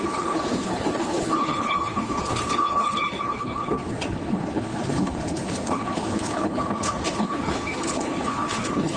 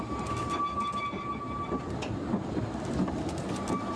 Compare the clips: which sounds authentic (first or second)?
second